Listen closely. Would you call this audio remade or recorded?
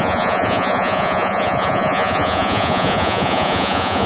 remade